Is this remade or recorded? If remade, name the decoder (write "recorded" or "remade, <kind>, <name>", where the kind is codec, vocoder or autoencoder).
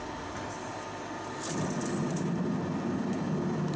recorded